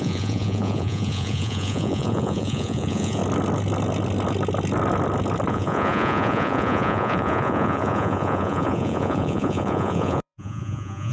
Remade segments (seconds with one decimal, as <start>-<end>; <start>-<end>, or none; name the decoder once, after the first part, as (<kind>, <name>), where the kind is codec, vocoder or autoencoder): 0.0-3.2 (vocoder, Vocos); 5.5-11.1